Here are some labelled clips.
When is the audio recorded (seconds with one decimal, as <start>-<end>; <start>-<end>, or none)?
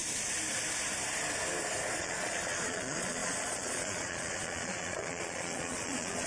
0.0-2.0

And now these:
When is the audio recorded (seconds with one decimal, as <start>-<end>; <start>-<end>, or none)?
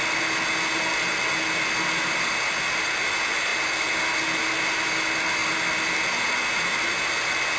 0.0-7.6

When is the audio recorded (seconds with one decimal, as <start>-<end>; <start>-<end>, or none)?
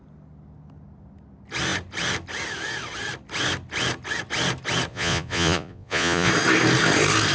0.0-4.9; 6.3-7.3